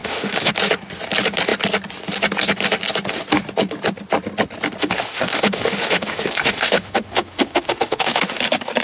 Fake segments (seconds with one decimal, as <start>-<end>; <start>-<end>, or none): 0.0-0.5; 4.8-8.4

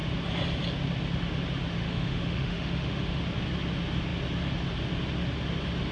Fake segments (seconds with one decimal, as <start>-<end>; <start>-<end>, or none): 1.8-3.2

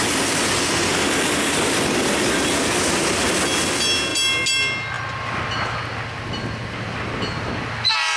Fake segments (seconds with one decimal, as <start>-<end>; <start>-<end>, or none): none

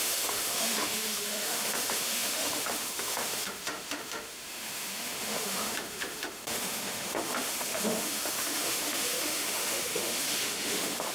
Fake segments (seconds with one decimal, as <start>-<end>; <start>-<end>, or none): 0.0-11.1

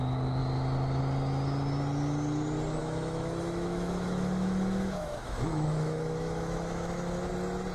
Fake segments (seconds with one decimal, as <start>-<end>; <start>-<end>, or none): 2.8-7.3

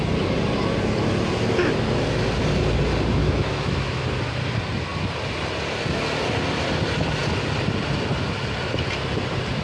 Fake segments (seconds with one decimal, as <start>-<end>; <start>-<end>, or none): 3.2-4.0

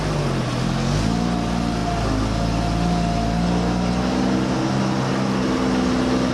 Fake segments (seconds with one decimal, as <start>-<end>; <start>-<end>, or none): none